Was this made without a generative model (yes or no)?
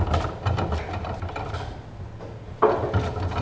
yes